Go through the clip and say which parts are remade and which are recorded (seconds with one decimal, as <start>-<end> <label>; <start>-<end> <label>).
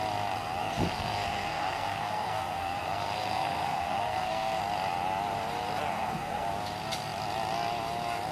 0.0-0.6 recorded; 0.6-4.6 remade; 4.6-5.9 recorded; 5.9-6.5 remade; 6.5-8.3 recorded